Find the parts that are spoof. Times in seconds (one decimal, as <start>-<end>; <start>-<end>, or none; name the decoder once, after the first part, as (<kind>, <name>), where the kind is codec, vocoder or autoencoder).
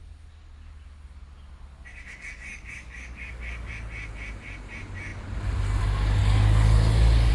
1.9-3.7 (codec, DAC); 6.2-7.3